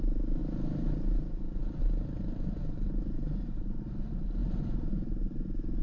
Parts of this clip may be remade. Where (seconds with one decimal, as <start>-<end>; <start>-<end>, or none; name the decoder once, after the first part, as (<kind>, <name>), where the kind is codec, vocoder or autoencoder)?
none